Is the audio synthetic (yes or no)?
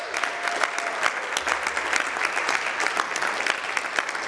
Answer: no